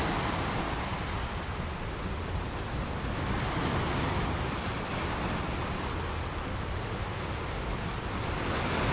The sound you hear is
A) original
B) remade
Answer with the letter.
A